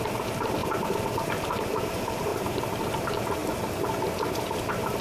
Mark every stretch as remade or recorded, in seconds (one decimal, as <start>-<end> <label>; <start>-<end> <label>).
0.0-3.4 remade; 3.4-4.6 recorded; 4.6-5.0 remade